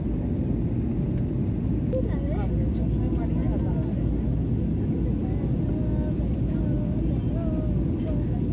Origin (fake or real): real